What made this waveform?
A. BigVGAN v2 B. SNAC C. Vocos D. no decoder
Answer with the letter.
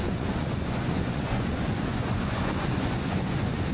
C